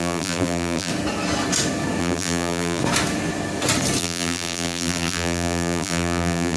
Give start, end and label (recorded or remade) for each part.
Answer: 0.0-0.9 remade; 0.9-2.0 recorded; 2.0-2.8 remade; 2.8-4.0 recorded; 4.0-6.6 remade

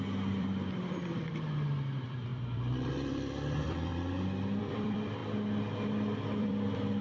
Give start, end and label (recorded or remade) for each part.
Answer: 0.0-3.9 remade; 3.9-4.6 recorded; 4.6-5.2 remade; 5.2-6.4 recorded; 6.4-7.0 remade

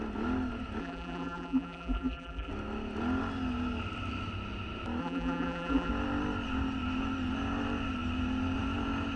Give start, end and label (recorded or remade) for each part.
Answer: 0.0-0.8 recorded; 0.8-2.5 remade; 2.5-5.0 recorded; 5.0-5.9 remade; 5.9-9.2 recorded

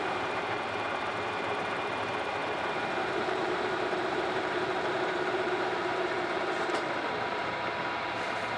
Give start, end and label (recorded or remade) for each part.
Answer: 0.0-2.4 remade; 2.4-3.1 recorded; 3.1-8.6 remade

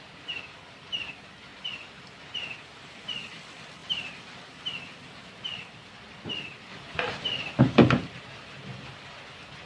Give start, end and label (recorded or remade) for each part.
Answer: 0.0-1.5 recorded; 1.5-2.0 remade; 2.0-3.8 recorded; 3.8-4.3 remade; 4.3-6.7 recorded; 6.7-7.6 remade; 7.6-9.7 recorded

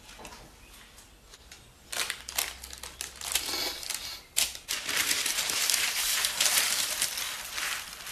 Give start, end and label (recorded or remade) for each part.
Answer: 0.0-4.0 recorded; 4.0-7.1 remade; 7.1-8.1 recorded

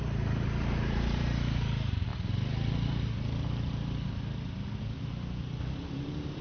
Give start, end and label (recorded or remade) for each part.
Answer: 0.0-2.1 remade; 2.1-5.6 recorded; 5.6-6.4 remade